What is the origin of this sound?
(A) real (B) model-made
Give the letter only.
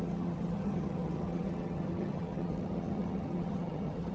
B